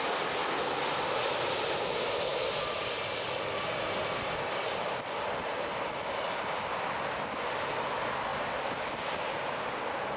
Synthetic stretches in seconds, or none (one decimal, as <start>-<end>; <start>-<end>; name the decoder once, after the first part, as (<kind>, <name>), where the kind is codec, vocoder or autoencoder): 8.3-8.9 (vocoder, BigVGAN v2)